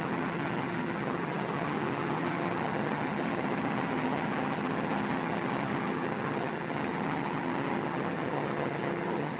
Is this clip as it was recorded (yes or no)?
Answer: no